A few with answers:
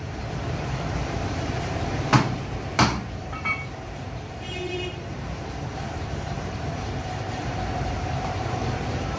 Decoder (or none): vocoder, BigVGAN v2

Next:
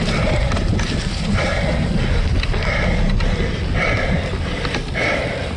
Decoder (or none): none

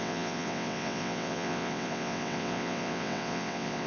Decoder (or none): vocoder, WaveNeXt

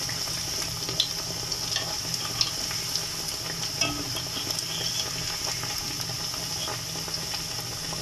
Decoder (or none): none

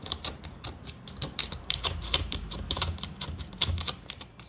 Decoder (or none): vocoder, BigVGAN v2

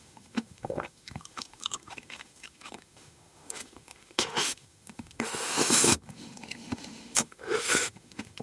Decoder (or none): autoencoder, DAC-VAE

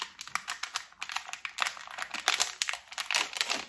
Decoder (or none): none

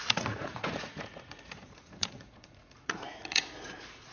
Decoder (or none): vocoder, Vocos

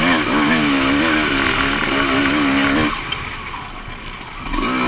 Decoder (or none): none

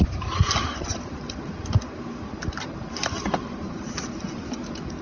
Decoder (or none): none